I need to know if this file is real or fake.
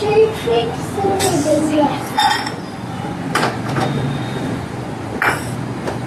fake